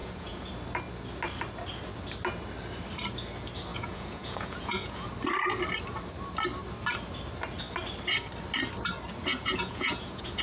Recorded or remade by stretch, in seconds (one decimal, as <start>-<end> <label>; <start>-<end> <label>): 0.0-0.5 remade; 0.5-3.7 recorded; 3.7-5.1 remade; 5.1-9.3 recorded; 9.3-10.4 remade